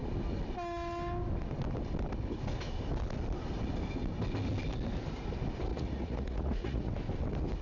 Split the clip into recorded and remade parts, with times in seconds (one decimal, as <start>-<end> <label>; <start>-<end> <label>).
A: 0.0-5.7 recorded; 5.7-6.9 remade; 6.9-7.6 recorded